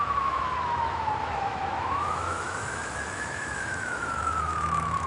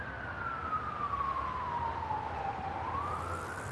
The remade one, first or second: first